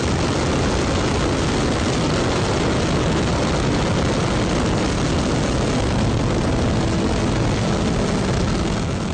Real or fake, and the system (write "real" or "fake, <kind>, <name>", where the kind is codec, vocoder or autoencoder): real